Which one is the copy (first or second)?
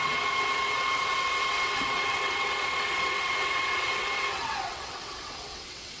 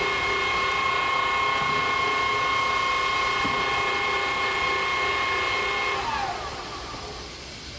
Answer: first